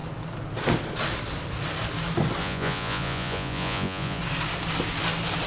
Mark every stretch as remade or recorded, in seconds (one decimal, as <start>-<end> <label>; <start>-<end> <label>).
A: 0.0-2.4 recorded; 2.4-4.2 remade; 4.2-5.5 recorded